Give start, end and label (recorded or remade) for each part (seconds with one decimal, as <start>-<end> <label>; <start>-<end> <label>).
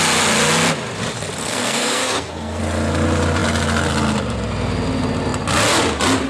0.0-1.4 recorded; 1.4-2.6 remade; 2.6-6.3 recorded